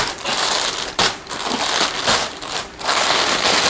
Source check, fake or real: fake